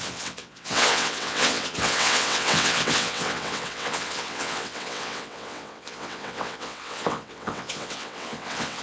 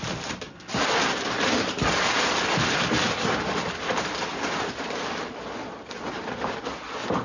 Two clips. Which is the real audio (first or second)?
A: second